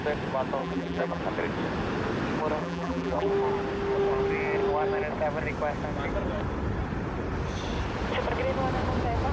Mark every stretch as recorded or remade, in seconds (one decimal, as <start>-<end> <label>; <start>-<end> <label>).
0.0-0.6 recorded; 0.6-1.2 remade; 1.2-2.6 recorded; 2.6-3.3 remade; 3.3-9.3 recorded